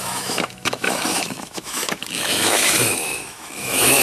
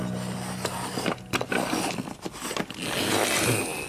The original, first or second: second